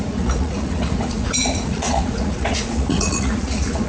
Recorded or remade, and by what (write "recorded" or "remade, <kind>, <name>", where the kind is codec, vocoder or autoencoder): remade, vocoder, Vocos